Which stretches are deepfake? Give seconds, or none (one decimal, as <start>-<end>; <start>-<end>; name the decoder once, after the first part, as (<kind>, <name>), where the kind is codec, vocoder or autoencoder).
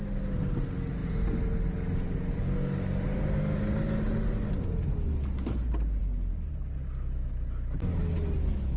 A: none